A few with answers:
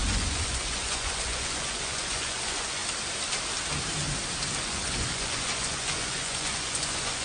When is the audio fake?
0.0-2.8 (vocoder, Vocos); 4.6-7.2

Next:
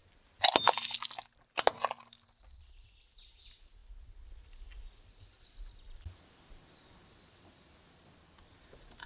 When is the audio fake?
none

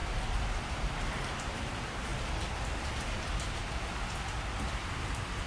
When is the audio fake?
0.7-2.1 (vocoder, BigVGAN v2); 2.8-3.6; 4.7-5.5

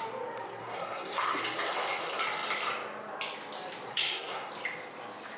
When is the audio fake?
0.6-1.4 (codec, SNAC); 3.9-4.5